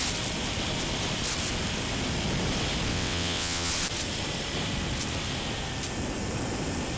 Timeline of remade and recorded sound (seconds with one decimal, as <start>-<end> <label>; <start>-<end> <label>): 0.0-2.9 recorded; 2.9-3.7 remade; 3.7-7.0 recorded